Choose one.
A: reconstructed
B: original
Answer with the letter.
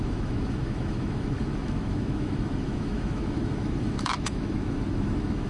A